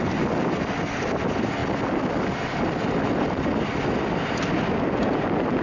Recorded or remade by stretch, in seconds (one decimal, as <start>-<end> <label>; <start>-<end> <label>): 0.0-5.6 recorded